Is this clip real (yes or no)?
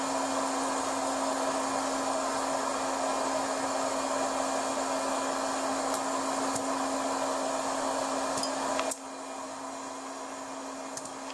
yes